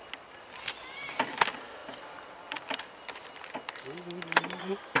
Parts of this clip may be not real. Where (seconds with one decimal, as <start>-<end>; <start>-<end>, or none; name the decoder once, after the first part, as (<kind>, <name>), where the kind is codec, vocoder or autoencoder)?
none

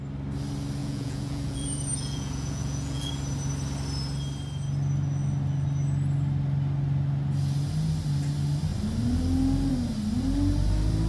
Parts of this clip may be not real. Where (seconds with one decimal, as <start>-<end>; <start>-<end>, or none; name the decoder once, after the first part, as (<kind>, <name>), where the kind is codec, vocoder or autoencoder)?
0.8-3.1 (vocoder, Vocos)

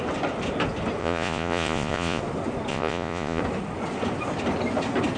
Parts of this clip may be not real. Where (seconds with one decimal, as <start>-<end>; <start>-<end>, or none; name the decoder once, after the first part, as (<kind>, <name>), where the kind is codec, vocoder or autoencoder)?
1.0-2.2 (vocoder, Vocos); 2.7-3.4

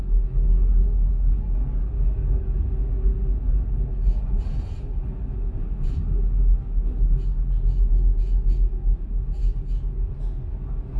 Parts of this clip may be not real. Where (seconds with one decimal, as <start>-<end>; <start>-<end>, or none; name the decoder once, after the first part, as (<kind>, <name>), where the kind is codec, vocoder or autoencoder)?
none

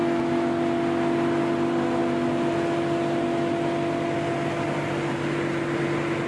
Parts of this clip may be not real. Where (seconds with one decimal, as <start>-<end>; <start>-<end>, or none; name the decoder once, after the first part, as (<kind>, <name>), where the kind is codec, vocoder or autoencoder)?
none

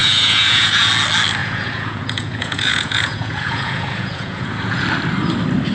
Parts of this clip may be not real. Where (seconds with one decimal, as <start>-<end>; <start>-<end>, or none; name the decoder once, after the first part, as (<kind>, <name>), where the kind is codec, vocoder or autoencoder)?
0.0-0.9 (vocoder, Vocos); 1.4-4.8

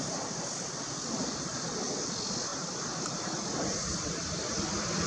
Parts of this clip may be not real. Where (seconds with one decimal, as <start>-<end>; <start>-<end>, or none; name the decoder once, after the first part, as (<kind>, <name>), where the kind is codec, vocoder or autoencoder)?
none